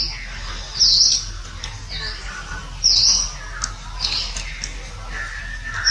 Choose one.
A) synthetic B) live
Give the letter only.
B